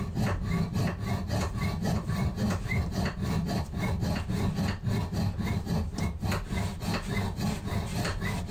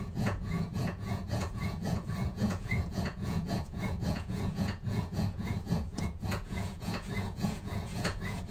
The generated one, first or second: second